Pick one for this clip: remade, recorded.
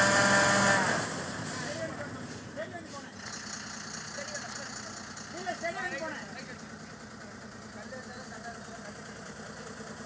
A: recorded